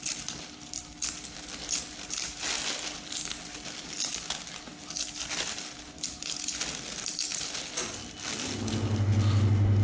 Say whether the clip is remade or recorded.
recorded